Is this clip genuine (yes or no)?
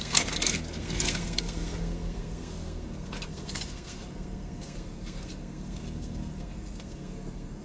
no